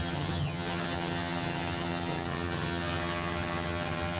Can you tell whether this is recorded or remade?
remade